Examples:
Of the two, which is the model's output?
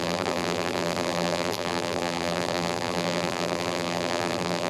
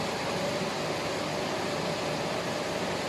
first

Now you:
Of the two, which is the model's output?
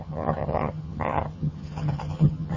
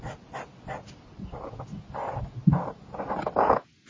first